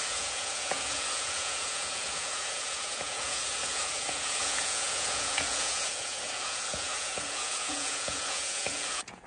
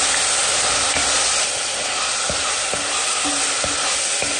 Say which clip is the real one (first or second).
second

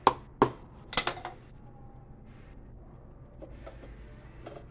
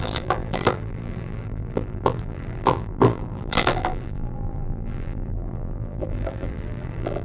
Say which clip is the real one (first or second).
first